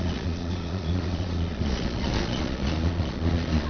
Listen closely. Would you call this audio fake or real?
fake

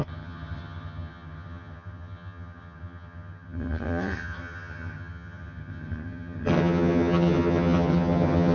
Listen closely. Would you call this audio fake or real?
fake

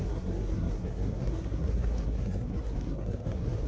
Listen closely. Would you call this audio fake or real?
fake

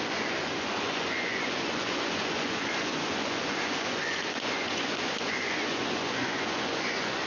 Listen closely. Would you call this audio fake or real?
fake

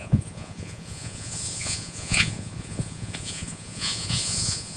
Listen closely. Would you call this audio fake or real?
fake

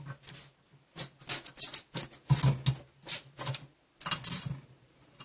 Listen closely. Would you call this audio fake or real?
real